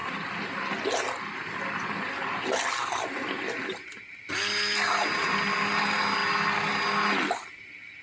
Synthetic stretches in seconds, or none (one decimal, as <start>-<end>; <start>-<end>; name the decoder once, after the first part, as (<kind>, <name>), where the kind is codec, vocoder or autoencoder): none